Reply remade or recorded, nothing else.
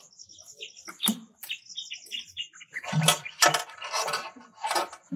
recorded